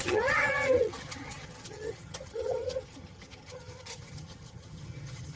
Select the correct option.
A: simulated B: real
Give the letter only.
A